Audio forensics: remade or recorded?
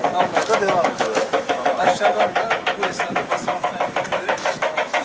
remade